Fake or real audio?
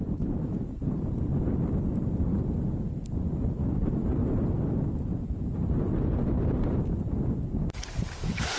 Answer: fake